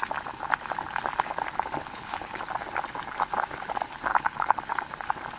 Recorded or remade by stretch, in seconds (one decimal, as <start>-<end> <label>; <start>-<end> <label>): 0.0-1.8 recorded; 1.8-2.4 remade; 2.4-4.1 recorded; 4.1-4.9 remade; 4.9-5.4 recorded